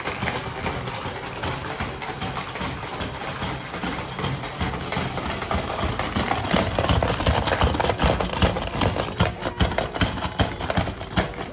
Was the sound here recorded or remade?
remade